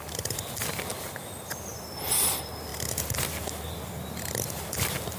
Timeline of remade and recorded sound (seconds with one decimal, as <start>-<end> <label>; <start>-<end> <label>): 0.0-2.7 remade; 2.7-3.7 recorded; 3.7-5.2 remade